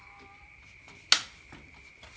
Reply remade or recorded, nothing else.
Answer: recorded